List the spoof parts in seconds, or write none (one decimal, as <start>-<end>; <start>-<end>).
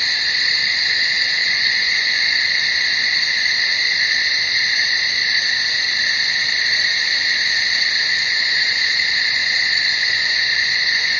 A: 1.4-2.2; 8.2-9.0; 9.4-11.2